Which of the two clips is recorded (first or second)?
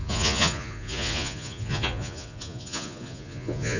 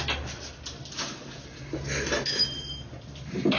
second